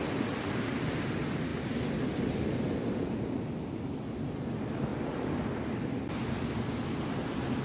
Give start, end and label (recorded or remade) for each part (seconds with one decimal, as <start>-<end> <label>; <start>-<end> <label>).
0.0-7.6 recorded